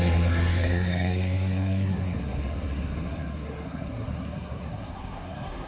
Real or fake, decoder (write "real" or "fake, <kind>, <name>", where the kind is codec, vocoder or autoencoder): fake, codec, SNAC